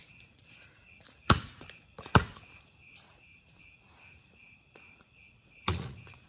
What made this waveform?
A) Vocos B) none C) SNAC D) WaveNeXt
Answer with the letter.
A